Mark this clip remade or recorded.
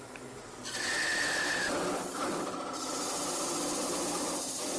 recorded